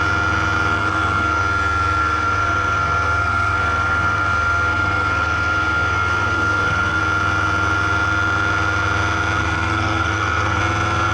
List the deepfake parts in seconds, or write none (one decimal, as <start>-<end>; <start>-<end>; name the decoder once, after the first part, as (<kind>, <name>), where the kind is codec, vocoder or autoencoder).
0.8-1.4 (codec, SNAC); 2.0-7.0; 9.4-10.6